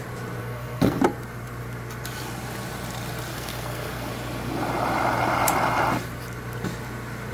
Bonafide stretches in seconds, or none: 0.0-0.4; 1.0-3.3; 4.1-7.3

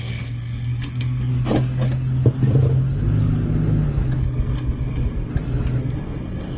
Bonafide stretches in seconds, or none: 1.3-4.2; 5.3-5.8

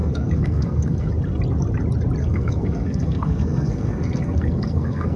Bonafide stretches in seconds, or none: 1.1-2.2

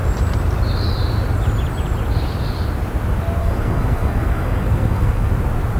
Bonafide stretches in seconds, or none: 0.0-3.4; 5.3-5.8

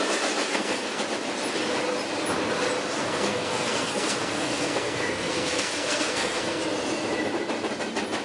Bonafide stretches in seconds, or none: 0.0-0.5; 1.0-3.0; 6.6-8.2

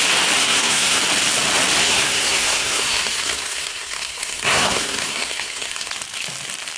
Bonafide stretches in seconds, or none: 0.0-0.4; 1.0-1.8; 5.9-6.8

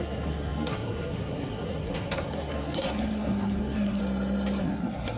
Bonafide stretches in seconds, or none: 4.0-4.6

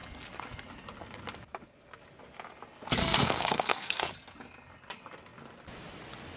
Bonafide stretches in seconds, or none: 0.0-3.0; 4.1-6.4